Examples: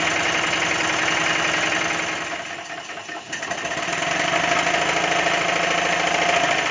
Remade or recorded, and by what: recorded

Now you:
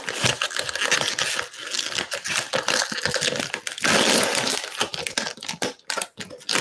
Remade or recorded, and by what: recorded